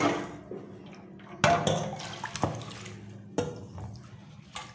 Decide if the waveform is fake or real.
real